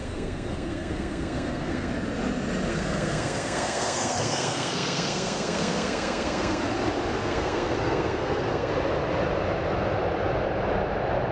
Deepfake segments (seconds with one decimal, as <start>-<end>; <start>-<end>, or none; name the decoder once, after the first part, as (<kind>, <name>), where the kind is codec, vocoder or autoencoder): 0.0-1.9 (codec, SNAC); 2.7-6.6; 7.2-8.7